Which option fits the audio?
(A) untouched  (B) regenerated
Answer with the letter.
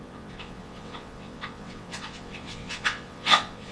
B